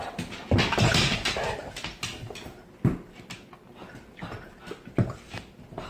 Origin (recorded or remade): recorded